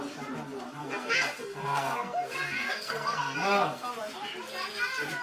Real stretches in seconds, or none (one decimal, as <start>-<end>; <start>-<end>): 0.0-0.8; 3.9-5.2